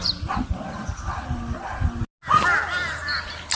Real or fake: real